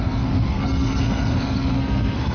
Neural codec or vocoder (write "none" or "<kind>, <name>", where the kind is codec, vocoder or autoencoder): codec, SNAC